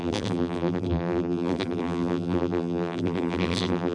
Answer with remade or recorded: remade